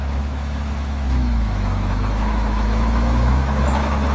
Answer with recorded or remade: remade